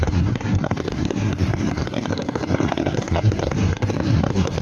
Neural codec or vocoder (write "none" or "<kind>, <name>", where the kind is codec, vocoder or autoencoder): codec, SNAC